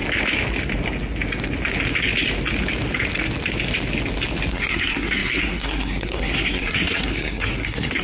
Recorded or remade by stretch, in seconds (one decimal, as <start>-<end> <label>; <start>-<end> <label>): 0.0-4.5 recorded; 4.5-8.0 remade